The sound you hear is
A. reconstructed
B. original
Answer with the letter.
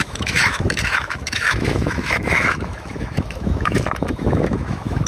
A